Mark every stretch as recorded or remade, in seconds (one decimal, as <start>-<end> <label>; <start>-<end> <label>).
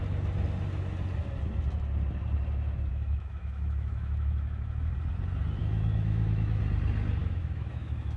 0.0-2.9 recorded; 2.9-4.9 remade; 4.9-5.6 recorded; 5.6-6.6 remade; 6.6-7.2 recorded; 7.2-8.2 remade